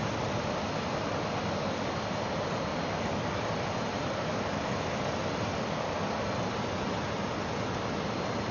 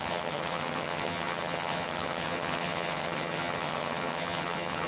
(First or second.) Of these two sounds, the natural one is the first